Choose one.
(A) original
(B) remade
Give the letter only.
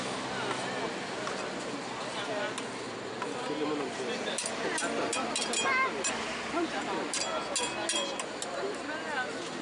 A